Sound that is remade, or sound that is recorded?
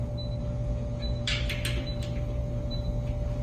recorded